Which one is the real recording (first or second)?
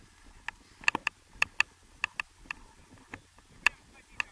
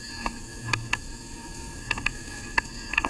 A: first